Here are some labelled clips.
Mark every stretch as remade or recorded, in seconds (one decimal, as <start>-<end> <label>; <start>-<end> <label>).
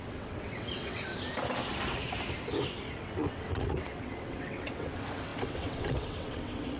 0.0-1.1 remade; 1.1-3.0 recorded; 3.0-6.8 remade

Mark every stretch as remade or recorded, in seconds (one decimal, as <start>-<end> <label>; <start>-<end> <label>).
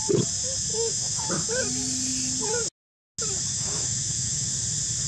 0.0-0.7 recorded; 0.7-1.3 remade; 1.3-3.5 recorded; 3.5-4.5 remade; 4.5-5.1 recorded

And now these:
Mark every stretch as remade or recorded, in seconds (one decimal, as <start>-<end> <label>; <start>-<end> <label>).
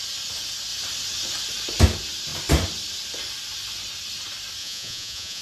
0.0-4.6 recorded; 4.6-5.4 remade